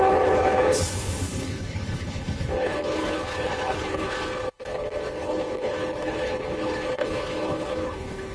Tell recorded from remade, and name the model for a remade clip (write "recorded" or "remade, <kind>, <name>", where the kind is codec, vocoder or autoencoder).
remade, codec, HILCodec